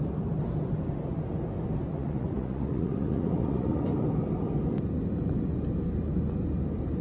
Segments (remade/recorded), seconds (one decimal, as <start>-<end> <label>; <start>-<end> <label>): 0.0-1.9 recorded; 1.9-3.8 remade; 3.8-7.0 recorded